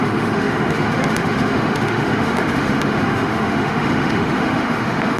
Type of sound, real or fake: fake